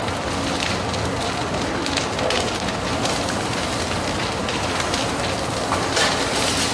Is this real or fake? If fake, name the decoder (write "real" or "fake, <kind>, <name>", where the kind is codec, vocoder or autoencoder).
real